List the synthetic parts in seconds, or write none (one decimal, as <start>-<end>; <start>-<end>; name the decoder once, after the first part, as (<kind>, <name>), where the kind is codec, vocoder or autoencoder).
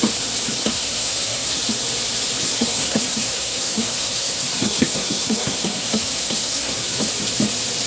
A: 0.6-1.6 (codec, SNAC); 2.4-7.1